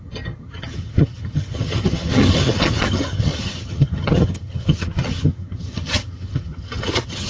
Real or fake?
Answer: fake